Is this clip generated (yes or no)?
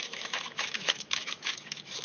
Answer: yes